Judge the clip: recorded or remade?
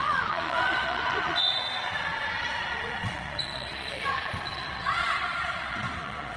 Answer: remade